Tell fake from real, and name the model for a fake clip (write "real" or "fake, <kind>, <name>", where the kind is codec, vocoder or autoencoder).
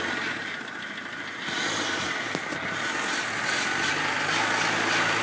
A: real